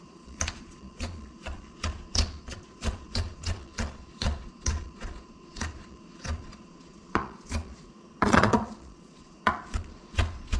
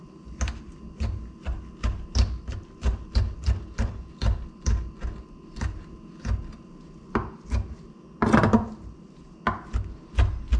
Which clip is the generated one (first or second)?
first